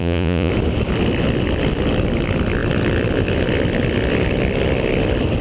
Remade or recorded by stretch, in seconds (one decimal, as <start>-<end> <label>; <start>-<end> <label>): 0.0-0.5 remade; 0.5-5.4 recorded